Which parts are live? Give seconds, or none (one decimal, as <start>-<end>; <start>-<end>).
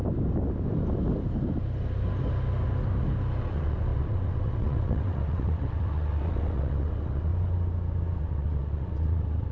0.0-3.4; 7.3-8.2